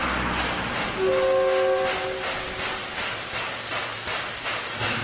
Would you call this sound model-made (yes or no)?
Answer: no